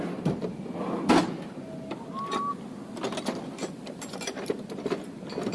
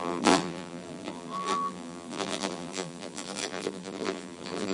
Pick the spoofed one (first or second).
second